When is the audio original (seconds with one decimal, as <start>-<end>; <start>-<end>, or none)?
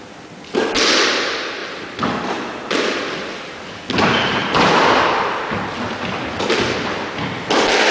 0.0-7.9